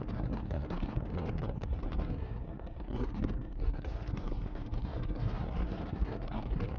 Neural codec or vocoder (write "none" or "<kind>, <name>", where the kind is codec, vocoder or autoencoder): codec, SNAC